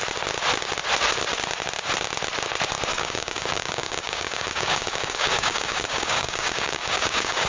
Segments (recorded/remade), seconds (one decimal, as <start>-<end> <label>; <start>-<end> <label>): 0.0-2.9 recorded; 2.9-7.5 remade